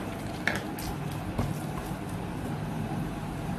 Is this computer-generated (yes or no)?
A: no